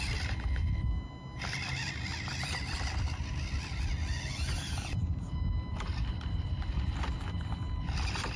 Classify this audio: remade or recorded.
recorded